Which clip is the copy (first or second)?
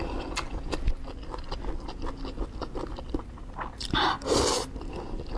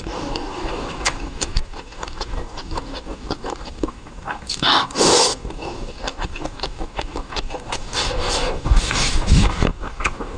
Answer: second